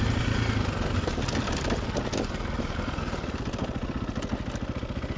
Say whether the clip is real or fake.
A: real